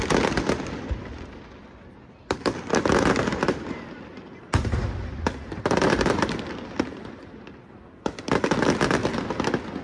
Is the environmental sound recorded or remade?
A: recorded